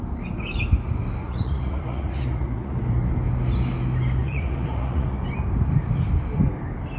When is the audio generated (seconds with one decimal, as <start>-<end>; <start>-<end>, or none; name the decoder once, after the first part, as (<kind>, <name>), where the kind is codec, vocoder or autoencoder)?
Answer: 1.2-2.8 (vocoder, Vocos); 4.2-5.2